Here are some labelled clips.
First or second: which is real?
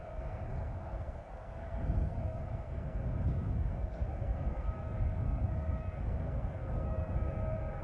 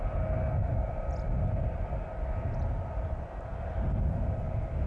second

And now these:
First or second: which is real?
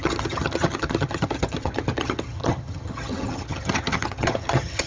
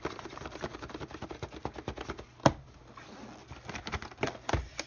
second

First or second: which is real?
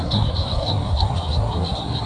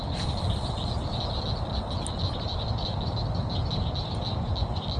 second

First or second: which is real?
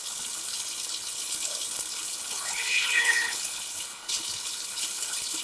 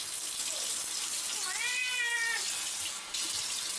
second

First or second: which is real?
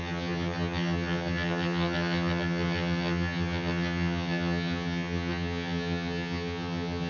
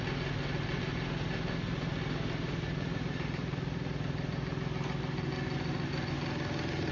second